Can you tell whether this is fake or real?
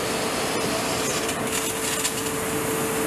real